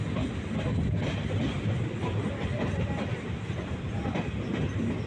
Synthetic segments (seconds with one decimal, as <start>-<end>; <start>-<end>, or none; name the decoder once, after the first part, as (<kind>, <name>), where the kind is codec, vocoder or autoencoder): none